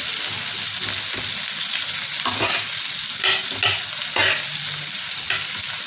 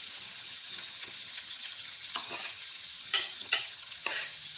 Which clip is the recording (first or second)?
first